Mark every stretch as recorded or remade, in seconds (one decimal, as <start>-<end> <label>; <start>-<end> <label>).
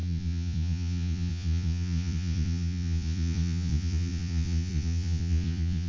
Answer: 0.0-5.9 remade